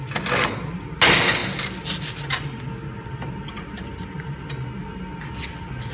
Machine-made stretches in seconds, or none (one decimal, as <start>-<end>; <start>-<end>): none